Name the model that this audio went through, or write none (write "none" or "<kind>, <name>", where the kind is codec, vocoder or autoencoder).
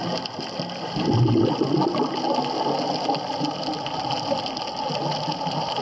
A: none